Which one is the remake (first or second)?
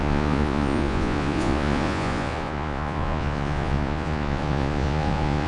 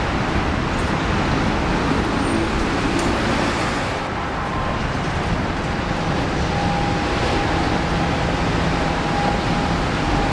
first